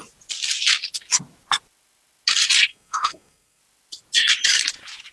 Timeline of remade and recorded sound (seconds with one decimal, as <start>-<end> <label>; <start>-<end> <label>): 0.0-2.7 recorded; 2.7-3.6 remade; 3.6-5.1 recorded